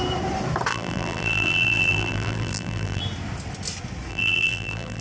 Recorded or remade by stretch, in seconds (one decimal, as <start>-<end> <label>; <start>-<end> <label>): 0.0-0.7 recorded; 0.7-3.0 remade; 3.0-4.1 recorded; 4.1-5.0 remade